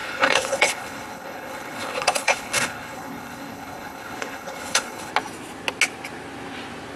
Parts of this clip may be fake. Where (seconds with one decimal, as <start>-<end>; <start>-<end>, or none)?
0.0-5.1